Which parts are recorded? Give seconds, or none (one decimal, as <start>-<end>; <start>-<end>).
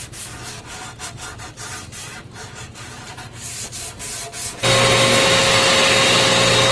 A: 0.0-2.0; 3.9-6.7